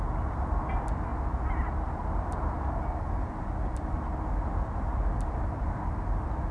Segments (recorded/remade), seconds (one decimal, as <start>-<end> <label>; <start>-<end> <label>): 0.0-6.5 recorded